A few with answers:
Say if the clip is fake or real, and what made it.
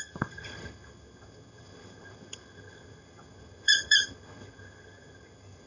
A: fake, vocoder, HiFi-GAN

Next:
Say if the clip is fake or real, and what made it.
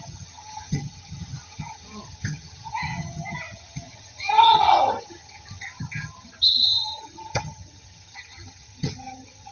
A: fake, vocoder, HiFi-GAN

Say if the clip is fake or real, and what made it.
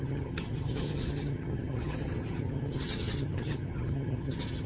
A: fake, vocoder, HiFi-GAN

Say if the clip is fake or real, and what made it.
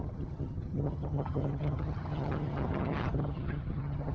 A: fake, vocoder, HiFi-GAN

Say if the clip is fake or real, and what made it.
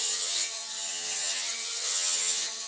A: fake, vocoder, HiFi-GAN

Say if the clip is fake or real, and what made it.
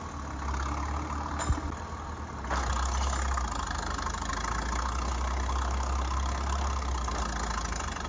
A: real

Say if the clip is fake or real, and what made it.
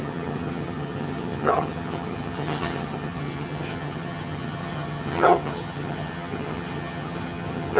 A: fake, vocoder, HiFi-GAN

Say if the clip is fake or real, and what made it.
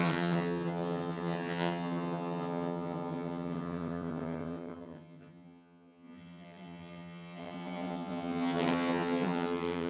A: fake, vocoder, HiFi-GAN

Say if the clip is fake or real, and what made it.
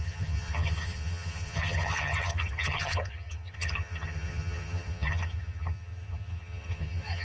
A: fake, vocoder, HiFi-GAN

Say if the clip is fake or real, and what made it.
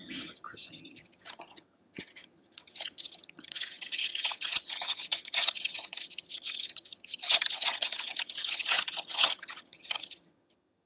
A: fake, vocoder, HiFi-GAN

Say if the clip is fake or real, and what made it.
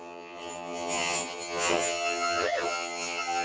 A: fake, vocoder, HiFi-GAN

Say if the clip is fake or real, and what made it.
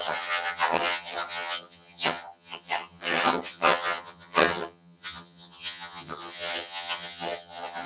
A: fake, vocoder, HiFi-GAN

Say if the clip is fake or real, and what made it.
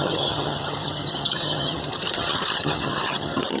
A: fake, vocoder, HiFi-GAN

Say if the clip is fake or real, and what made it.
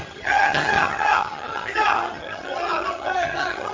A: fake, vocoder, HiFi-GAN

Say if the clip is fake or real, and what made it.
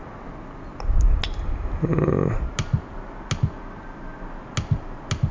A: real